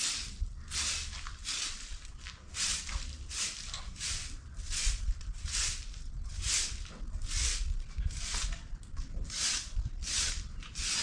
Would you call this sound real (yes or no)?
yes